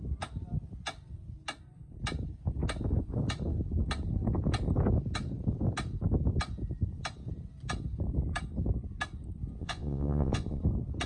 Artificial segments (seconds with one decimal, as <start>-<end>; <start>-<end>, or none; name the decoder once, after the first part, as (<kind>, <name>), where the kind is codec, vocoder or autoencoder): 9.6-10.6 (vocoder, Vocos)